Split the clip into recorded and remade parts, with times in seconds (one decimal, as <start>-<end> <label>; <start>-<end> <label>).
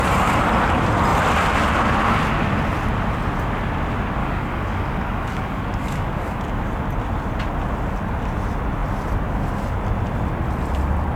0.0-4.2 recorded; 4.2-6.4 remade; 6.4-11.2 recorded